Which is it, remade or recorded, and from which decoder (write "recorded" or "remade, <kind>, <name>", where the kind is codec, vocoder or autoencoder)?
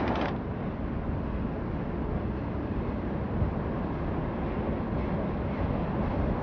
recorded